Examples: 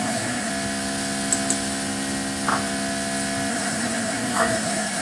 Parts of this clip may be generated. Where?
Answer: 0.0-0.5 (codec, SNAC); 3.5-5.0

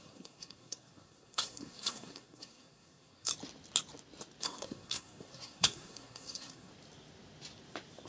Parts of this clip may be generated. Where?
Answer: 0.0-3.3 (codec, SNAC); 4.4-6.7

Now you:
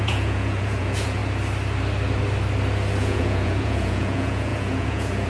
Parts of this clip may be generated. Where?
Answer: 0.0-1.2 (vocoder, Vocos); 3.0-5.3